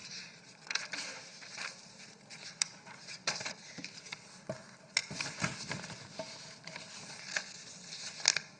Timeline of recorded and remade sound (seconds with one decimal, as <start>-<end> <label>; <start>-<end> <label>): 0.0-4.0 remade; 4.0-8.6 recorded